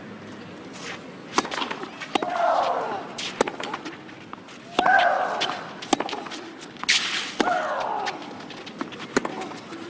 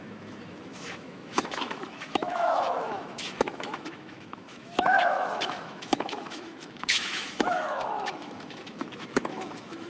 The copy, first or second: second